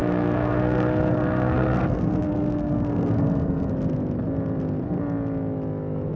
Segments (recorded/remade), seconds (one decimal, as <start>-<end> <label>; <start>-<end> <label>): 0.0-3.7 remade; 3.7-6.2 recorded